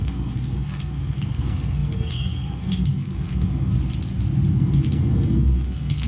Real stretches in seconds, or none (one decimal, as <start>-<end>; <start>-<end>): 3.7-4.5